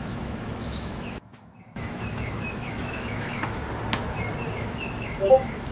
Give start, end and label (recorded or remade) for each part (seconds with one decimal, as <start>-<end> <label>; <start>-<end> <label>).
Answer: 0.0-3.6 remade; 3.6-4.6 recorded; 4.6-5.7 remade